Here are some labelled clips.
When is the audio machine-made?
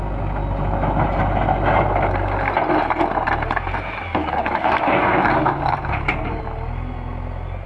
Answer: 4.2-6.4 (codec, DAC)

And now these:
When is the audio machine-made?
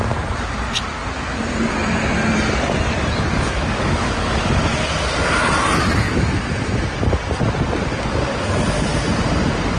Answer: 3.3-4.5 (codec, DAC)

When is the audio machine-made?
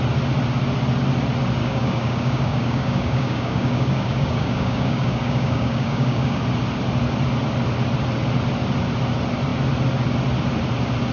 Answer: 1.6-6.4 (codec, DAC)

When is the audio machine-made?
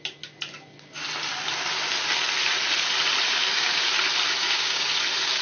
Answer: 3.3-3.9 (codec, DAC); 4.4-4.9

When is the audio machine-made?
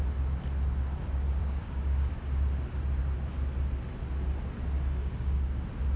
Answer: 1.4-2.1 (codec, DAC); 5.0-5.6